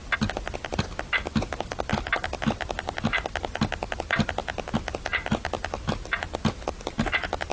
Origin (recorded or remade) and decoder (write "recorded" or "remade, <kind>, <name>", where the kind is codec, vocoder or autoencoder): recorded